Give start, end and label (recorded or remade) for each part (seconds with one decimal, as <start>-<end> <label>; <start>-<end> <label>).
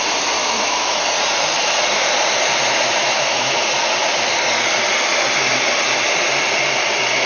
0.0-0.4 recorded; 0.4-1.0 remade; 1.0-3.0 recorded; 3.0-3.6 remade; 3.6-7.3 recorded